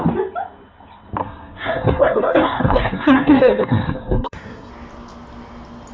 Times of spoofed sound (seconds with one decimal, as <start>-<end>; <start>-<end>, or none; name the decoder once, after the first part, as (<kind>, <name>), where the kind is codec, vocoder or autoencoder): 1.2-4.7 (codec, SNAC)